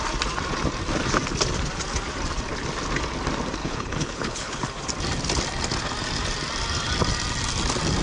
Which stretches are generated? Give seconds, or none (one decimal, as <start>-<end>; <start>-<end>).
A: 3.6-4.6